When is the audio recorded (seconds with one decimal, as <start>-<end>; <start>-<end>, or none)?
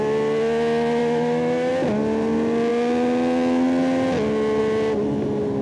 0.0-1.0; 1.7-5.6